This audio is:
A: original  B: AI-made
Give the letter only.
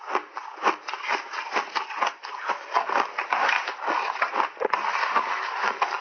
A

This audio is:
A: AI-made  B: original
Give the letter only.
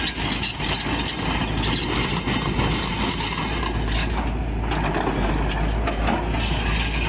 B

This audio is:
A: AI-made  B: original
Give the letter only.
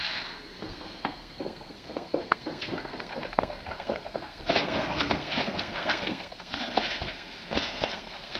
A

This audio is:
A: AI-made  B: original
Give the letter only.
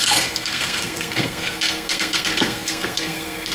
A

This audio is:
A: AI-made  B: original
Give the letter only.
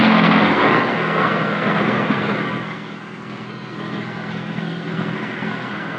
A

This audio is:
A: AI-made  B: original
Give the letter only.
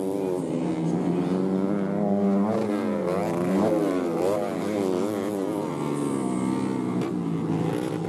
B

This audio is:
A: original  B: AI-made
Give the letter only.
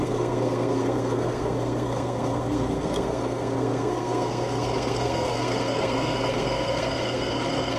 B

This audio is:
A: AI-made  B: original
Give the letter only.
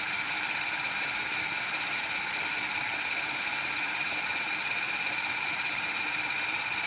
B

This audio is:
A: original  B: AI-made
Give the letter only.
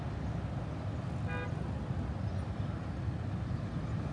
A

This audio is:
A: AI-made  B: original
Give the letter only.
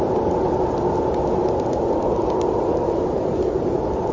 B